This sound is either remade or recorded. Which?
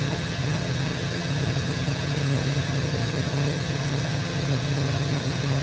remade